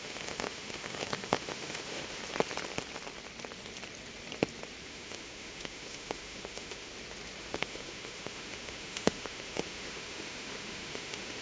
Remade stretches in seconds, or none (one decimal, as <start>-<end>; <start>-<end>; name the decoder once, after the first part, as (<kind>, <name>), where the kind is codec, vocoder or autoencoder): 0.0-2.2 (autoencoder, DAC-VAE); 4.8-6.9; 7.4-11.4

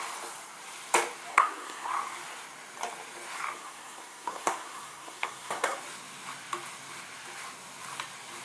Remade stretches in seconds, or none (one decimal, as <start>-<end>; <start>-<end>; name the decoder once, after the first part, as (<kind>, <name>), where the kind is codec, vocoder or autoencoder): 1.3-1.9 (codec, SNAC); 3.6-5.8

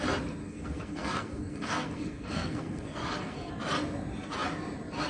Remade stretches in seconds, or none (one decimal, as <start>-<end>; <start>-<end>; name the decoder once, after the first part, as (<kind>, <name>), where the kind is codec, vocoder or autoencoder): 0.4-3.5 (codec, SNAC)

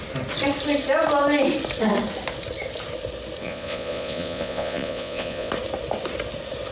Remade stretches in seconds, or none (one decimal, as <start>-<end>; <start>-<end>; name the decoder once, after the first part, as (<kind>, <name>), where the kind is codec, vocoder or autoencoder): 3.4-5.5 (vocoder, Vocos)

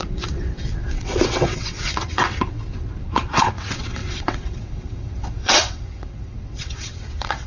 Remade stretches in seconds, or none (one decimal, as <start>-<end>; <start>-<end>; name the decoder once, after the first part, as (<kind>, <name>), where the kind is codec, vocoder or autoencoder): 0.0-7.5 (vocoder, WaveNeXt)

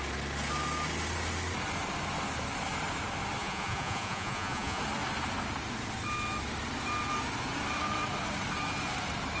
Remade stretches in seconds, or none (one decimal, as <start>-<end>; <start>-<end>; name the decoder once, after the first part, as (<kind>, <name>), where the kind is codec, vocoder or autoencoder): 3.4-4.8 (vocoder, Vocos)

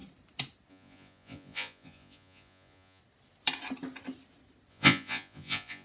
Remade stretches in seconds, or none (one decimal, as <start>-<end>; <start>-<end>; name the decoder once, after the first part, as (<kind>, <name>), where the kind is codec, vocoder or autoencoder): 0.7-3.0 (vocoder, Vocos); 4.7-5.8

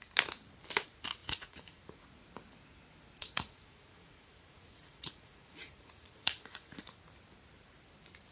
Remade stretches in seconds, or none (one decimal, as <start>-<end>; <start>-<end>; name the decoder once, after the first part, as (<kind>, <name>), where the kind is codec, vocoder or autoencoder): 1.2-1.8 (vocoder, Vocos); 3.2-6.8